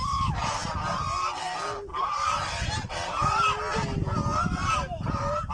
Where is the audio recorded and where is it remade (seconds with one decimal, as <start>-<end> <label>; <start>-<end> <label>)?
0.0-1.9 recorded; 1.9-3.3 remade; 3.3-4.6 recorded; 4.6-5.5 remade